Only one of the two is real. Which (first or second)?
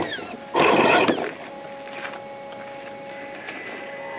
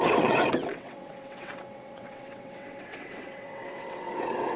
first